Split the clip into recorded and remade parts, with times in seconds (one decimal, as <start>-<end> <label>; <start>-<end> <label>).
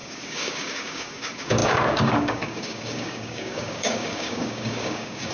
0.0-5.3 remade